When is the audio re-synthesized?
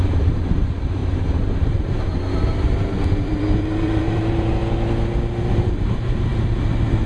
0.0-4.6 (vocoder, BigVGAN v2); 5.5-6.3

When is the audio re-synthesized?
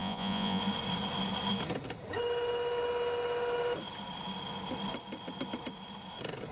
0.0-0.6 (vocoder, Vocos)